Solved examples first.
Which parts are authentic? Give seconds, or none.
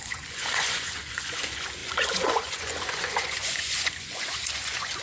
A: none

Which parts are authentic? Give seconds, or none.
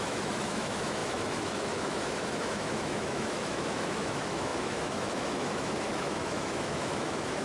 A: none